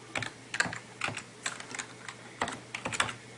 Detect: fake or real real